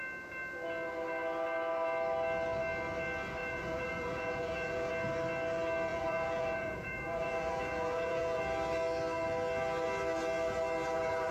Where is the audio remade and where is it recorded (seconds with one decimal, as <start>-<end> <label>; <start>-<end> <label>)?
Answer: 0.0-3.4 recorded; 3.4-4.9 remade; 4.9-5.9 recorded; 5.9-8.4 remade; 8.4-11.3 recorded